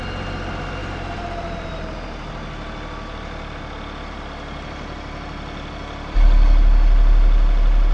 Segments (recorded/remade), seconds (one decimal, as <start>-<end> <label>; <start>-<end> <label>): 0.0-7.9 recorded